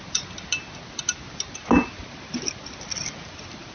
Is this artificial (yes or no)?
no